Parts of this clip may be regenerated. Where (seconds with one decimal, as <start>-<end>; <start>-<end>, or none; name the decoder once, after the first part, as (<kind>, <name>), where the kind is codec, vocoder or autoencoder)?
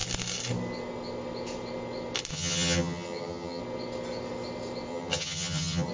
2.3-3.6 (vocoder, HiFi-GAN); 4.9-5.9